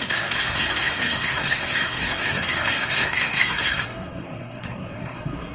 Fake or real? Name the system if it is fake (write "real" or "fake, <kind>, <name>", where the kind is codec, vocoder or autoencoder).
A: fake, codec, SNAC